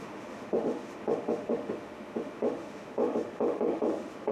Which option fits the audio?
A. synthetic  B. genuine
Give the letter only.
A